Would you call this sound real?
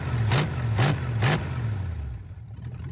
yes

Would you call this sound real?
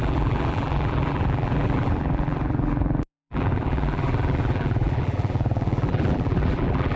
no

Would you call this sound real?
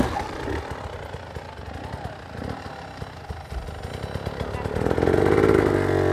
yes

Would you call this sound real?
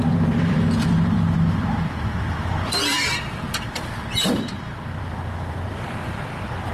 no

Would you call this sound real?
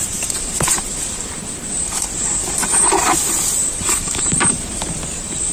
no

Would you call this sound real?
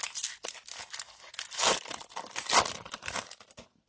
yes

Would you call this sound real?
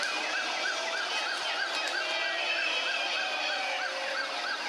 yes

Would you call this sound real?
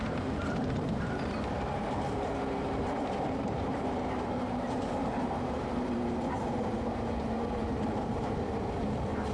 no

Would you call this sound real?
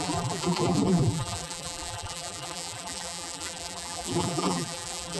no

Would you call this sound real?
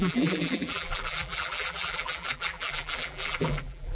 no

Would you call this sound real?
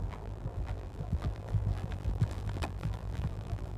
no